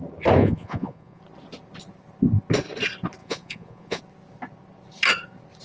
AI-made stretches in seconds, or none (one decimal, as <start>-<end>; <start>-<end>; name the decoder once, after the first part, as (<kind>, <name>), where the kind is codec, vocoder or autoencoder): 0.4-1.2 (vocoder, Vocos); 3.2-4.0